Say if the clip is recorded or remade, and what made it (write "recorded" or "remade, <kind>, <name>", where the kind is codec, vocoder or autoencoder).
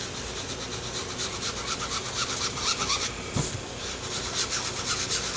recorded